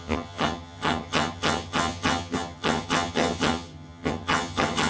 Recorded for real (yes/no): no